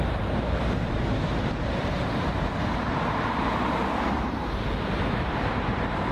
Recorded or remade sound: remade